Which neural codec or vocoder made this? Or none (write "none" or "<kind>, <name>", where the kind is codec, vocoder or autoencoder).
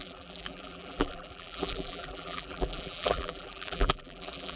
vocoder, BigVGAN v2